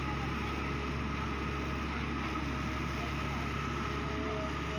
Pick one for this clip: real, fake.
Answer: real